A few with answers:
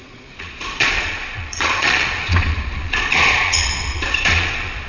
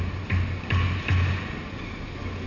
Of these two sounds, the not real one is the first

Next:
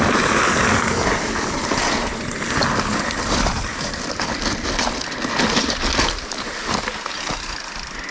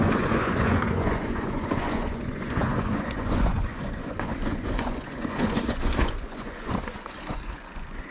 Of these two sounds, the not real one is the second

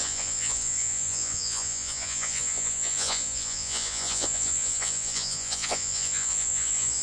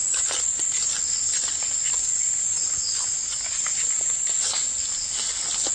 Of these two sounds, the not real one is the first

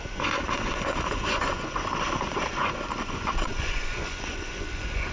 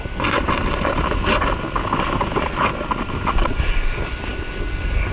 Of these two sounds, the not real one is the first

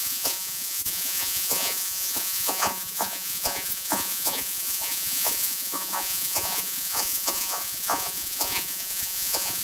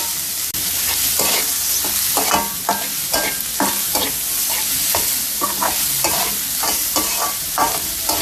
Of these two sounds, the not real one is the first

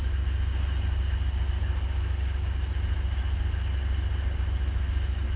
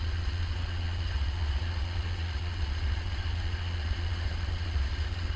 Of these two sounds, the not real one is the second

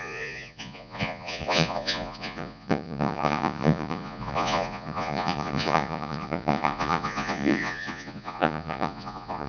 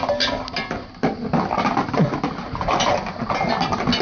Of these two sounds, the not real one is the first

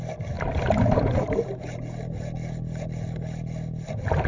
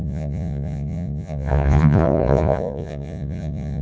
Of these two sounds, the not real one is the second